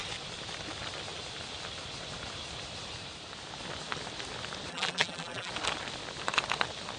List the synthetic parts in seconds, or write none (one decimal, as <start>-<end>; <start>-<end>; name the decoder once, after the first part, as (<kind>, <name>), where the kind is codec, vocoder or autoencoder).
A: 4.7-5.5 (vocoder, BigVGAN v2)